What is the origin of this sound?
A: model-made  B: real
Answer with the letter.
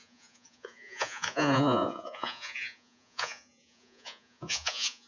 A